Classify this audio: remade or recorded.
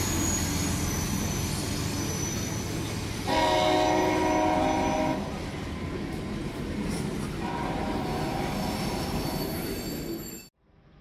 recorded